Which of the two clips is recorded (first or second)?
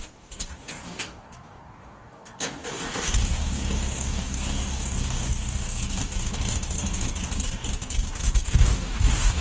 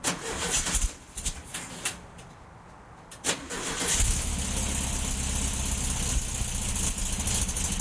second